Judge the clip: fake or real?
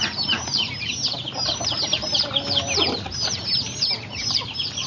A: real